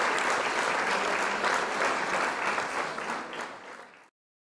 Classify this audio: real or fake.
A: real